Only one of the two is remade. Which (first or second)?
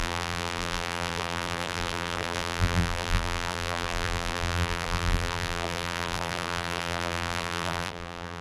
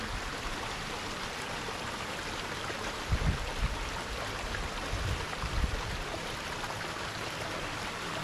first